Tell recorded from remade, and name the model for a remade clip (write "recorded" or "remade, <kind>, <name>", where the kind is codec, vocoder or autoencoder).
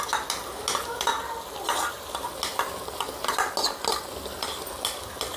recorded